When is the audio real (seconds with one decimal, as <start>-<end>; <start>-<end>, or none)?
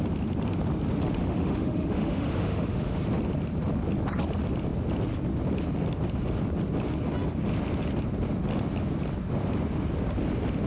0.0-1.2; 3.0-10.7